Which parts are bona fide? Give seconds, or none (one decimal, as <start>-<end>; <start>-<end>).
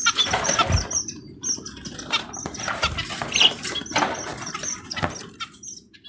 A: 0.0-6.1